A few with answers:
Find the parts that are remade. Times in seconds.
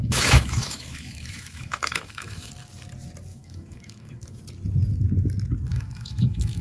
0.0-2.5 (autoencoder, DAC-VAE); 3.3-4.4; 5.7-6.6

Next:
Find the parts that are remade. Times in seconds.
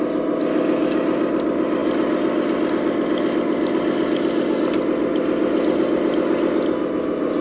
none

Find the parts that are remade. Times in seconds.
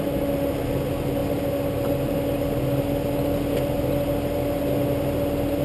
none